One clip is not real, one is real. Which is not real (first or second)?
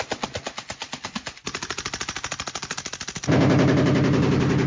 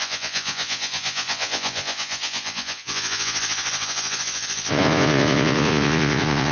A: second